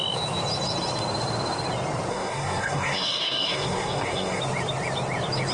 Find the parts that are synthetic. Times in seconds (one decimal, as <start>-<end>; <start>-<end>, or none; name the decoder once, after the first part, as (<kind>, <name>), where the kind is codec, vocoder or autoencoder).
2.1-4.4 (codec, SNAC)